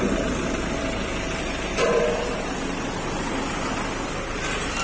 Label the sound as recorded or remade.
remade